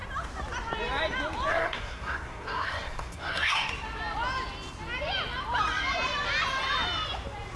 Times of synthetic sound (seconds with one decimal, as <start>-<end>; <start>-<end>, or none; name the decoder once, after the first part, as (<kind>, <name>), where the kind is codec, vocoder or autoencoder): 1.5-3.7 (codec, SNAC)